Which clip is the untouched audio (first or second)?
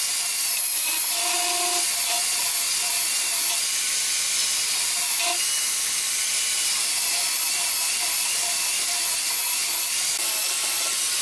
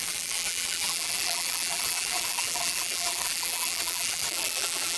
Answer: first